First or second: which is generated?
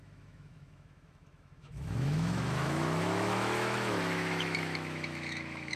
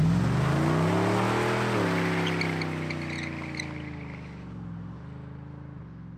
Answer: first